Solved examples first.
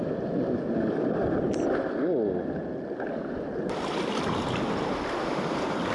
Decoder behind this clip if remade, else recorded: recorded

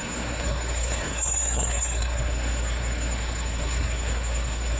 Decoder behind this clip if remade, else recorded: remade, codec, SNAC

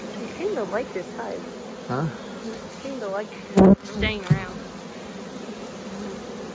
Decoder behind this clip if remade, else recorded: recorded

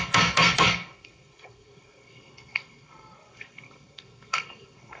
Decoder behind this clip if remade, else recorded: remade, codec, SNAC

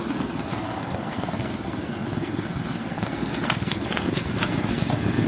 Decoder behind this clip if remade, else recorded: remade, codec, SNAC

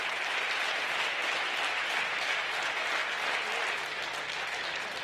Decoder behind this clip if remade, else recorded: recorded